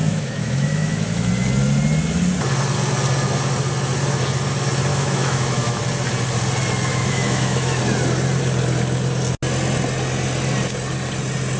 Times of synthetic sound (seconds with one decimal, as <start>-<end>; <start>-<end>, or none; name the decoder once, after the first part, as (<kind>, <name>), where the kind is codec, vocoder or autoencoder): 0.0-1.3 (autoencoder, DAC-VAE); 4.9-5.8; 6.9-7.8

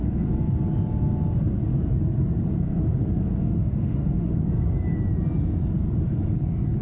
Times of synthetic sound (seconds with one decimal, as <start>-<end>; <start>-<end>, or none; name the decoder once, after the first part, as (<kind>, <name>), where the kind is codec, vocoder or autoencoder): 3.4-4.3 (autoencoder, DAC-VAE)

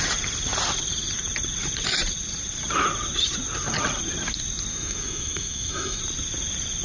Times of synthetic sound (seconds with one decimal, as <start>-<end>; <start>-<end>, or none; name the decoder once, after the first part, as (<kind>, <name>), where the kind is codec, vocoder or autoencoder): 4.7-6.0 (autoencoder, DAC-VAE)

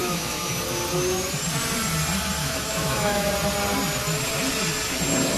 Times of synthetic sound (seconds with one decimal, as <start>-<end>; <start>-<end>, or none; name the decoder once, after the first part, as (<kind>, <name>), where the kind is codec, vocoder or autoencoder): 0.0-0.5 (autoencoder, DAC-VAE); 2.4-3.3

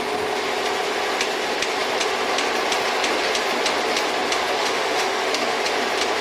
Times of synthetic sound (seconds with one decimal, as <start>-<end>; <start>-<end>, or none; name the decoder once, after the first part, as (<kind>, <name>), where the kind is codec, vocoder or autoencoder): 4.6-5.6 (autoencoder, DAC-VAE)

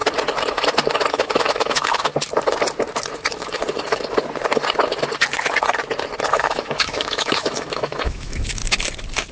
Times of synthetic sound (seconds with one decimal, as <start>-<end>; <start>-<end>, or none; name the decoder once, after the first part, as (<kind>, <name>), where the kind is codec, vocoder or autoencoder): 1.1-2.1 (autoencoder, DAC-VAE); 6.3-8.6

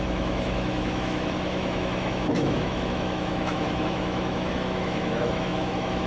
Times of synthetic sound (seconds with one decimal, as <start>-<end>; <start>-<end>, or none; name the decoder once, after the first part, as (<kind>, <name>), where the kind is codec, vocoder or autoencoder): 0.0-6.1 (autoencoder, DAC-VAE)

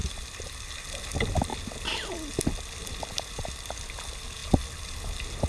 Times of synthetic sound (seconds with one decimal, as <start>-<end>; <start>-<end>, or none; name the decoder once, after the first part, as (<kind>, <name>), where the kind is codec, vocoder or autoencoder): none